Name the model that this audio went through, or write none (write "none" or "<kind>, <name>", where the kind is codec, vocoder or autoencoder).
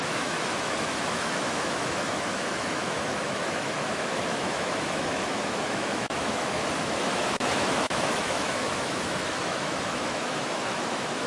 autoencoder, DAC-VAE